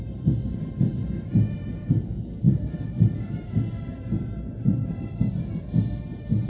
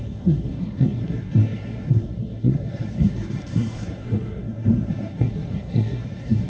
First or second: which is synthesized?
second